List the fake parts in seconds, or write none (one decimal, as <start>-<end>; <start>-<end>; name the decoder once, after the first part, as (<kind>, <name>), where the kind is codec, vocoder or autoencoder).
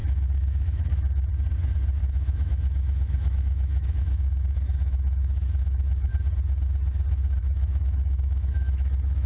0.0-1.3 (autoencoder, DAC-VAE); 2.0-6.1; 7.4-9.3